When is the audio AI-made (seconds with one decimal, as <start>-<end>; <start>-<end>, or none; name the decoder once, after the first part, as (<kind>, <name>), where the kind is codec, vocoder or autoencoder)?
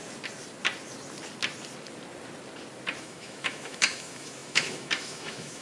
3.0-5.6 (autoencoder, DAC-VAE)